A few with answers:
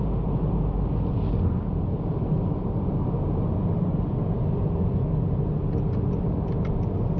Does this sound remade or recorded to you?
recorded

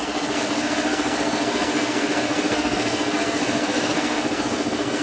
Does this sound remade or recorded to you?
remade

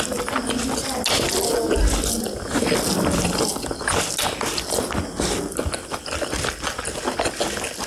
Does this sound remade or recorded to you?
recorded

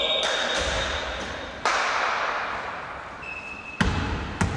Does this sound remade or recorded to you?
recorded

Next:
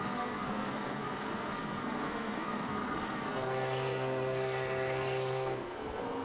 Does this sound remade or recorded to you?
remade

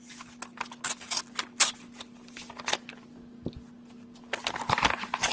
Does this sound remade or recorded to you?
recorded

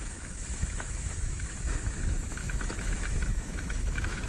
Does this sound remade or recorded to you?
remade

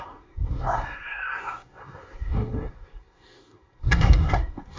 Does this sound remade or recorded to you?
remade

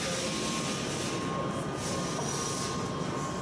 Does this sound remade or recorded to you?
recorded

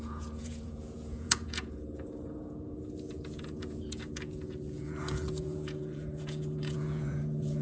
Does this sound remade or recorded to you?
remade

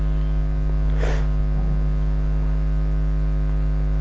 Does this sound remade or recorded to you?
recorded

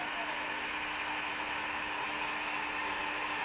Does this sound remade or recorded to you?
recorded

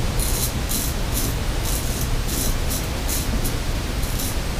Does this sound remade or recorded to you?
recorded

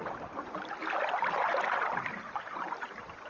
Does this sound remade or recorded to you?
recorded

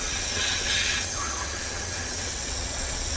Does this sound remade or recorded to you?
remade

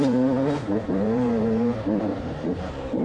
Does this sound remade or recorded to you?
remade